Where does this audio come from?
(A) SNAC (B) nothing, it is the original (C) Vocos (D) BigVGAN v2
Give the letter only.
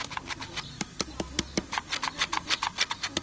B